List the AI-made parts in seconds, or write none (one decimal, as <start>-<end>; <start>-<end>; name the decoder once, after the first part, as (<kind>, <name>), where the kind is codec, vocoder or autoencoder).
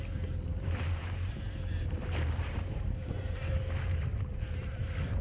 0.5-3.6 (vocoder, BigVGAN v2)